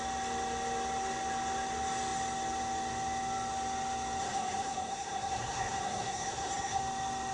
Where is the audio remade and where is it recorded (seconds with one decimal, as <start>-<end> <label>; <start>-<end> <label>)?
0.0-4.2 recorded; 4.2-6.8 remade; 6.8-7.3 recorded